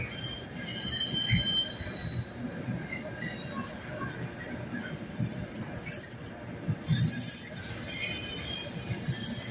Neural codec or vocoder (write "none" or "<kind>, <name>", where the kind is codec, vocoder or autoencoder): none